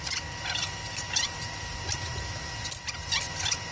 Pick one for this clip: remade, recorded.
remade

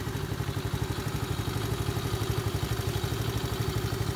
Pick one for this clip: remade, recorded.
recorded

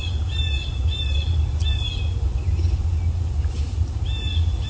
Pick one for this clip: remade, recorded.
recorded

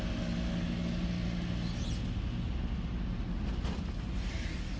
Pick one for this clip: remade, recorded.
recorded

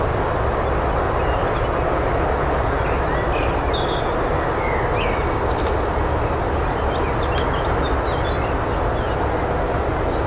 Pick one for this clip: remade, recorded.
recorded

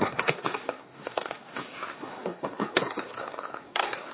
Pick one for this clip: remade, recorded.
remade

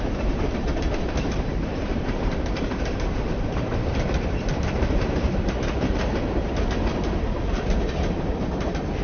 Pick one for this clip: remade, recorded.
remade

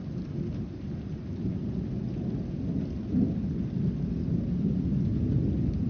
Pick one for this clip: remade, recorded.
recorded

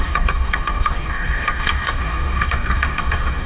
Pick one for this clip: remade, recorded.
remade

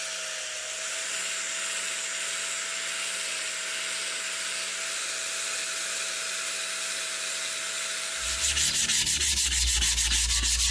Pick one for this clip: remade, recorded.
recorded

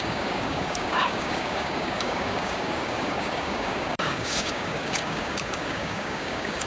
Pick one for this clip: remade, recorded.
remade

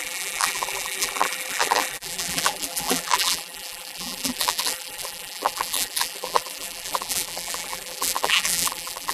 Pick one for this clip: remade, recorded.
remade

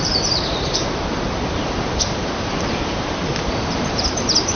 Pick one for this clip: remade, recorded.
remade